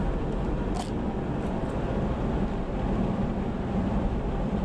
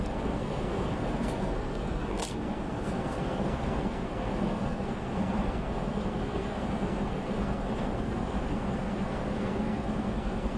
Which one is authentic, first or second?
first